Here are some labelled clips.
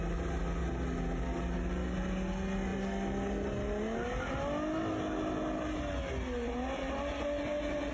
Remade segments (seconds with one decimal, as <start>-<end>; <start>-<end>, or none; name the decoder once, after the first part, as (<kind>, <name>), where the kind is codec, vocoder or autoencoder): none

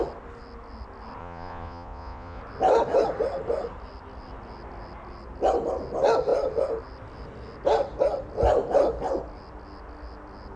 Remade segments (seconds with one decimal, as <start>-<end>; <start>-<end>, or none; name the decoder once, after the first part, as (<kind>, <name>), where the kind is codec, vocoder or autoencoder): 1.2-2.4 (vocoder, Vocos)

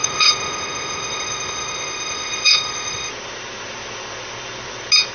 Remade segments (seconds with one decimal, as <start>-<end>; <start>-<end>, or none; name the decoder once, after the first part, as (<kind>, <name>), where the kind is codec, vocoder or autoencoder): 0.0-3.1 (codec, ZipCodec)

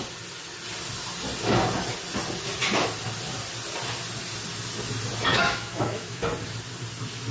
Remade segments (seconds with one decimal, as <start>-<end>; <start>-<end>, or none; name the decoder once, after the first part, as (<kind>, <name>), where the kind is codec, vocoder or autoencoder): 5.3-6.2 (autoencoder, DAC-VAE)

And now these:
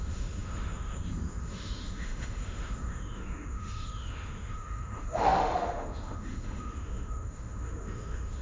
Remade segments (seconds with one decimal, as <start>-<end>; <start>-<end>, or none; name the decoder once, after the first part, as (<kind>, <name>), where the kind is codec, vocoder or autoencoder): 0.0-8.4 (autoencoder, DAC-VAE)

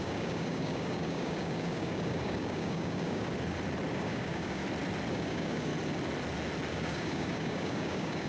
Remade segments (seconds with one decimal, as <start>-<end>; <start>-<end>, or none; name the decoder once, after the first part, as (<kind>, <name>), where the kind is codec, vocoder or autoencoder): 0.0-3.3 (codec, DAC); 3.9-4.6; 5.1-5.7; 6.7-8.3